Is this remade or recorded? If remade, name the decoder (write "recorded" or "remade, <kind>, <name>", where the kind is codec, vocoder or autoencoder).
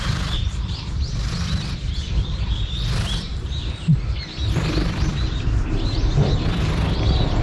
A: recorded